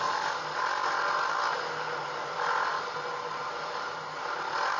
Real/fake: real